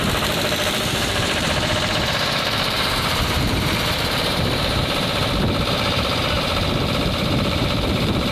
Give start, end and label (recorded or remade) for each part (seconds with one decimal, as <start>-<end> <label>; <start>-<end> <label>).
0.0-5.2 remade; 5.2-5.7 recorded; 5.7-6.5 remade; 6.5-7.2 recorded; 7.2-8.3 remade